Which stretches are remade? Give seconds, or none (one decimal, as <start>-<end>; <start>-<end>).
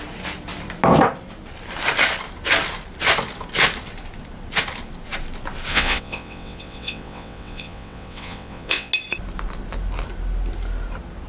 5.7-8.9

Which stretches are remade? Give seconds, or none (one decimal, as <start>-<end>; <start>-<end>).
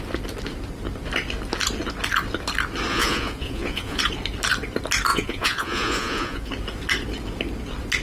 2.9-4.0; 5.1-6.5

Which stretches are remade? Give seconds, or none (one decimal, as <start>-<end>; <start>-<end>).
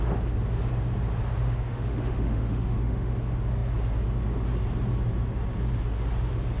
1.6-3.1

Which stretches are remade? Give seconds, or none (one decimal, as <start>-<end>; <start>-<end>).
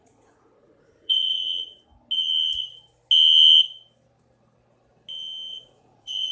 0.0-1.7; 5.5-6.3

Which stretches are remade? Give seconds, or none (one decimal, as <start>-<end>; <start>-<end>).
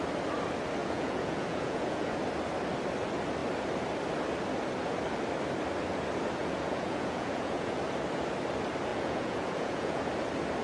0.8-2.2; 6.4-7.8; 8.9-10.0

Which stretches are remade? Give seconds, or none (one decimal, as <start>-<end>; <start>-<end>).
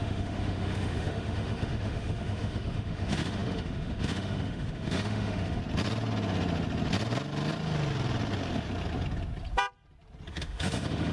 0.0-5.6; 10.3-11.1